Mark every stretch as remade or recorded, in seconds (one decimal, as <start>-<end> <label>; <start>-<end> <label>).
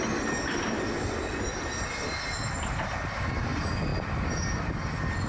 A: 0.0-5.3 recorded